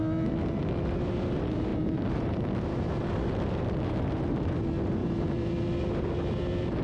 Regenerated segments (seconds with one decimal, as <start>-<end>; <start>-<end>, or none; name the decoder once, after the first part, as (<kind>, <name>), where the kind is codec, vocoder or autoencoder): 1.7-4.6 (vocoder, BigVGAN v2); 5.0-5.5